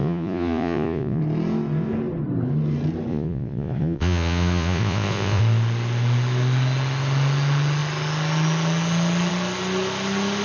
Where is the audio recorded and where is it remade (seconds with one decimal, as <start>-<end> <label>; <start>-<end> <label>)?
0.0-1.2 remade; 1.2-3.1 recorded; 3.1-5.4 remade; 5.4-10.4 recorded